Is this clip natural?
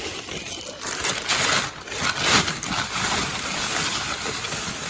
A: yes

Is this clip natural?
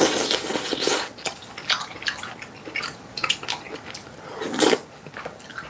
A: yes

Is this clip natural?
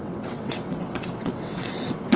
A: no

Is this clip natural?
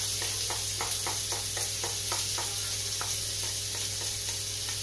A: yes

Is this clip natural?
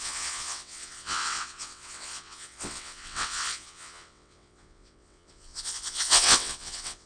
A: no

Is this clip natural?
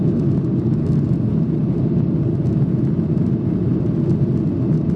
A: yes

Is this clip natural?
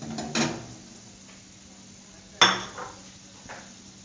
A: yes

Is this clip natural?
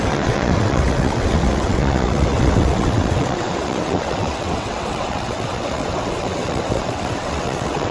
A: no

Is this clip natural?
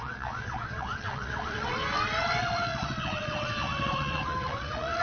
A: no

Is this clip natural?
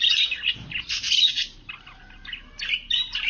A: yes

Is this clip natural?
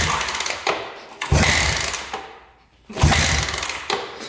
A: yes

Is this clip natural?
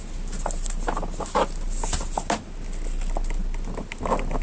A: yes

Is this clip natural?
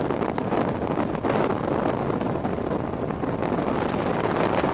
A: yes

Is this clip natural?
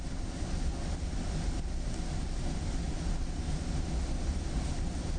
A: yes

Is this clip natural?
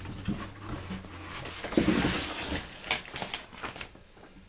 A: yes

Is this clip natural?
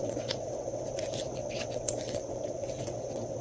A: no